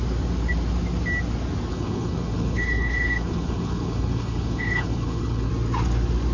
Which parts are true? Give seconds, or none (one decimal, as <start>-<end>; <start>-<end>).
0.0-1.7; 5.5-6.3